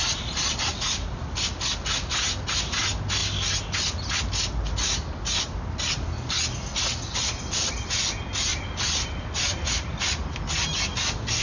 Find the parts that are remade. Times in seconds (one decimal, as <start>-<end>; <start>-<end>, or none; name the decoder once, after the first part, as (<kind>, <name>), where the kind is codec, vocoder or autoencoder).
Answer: 0.7-1.5 (vocoder, BigVGAN v2); 8.5-9.7